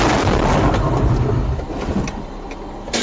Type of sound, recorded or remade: remade